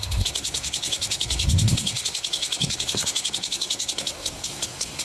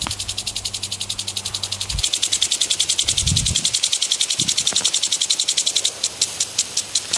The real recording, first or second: second